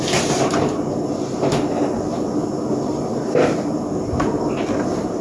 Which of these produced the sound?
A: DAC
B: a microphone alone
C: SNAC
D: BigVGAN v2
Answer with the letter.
B